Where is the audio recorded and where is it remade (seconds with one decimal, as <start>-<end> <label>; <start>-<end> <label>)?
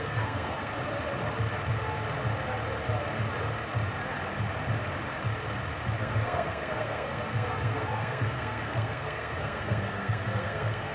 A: 0.0-0.7 remade; 0.7-6.0 recorded; 6.0-10.9 remade